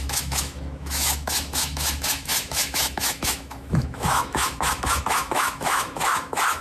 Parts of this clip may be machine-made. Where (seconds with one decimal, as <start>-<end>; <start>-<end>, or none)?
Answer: 0.0-6.6